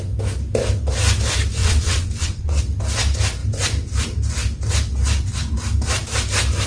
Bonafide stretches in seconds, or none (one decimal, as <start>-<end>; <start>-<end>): 0.0-1.6; 2.6-6.7